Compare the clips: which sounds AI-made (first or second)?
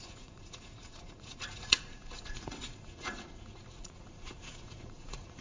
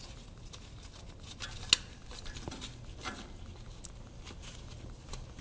first